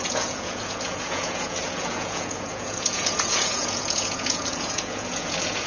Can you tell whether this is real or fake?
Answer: fake